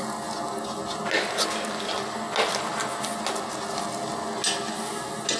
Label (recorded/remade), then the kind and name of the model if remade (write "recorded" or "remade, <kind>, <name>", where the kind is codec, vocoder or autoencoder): recorded